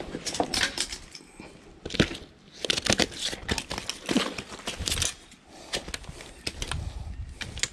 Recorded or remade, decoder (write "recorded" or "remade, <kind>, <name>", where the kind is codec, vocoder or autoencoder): recorded